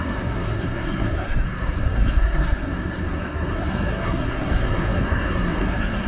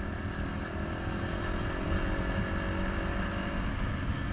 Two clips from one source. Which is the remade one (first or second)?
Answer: first